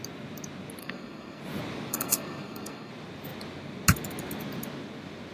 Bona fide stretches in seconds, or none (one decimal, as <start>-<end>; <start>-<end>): 0.0-0.8; 1.4-1.9; 2.9-5.3